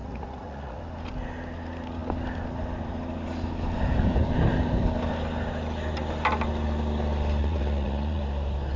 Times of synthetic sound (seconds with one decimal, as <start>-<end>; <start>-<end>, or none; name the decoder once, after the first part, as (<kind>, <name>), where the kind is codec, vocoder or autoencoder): 0.0-0.8 (vocoder, Vocos); 7.4-8.2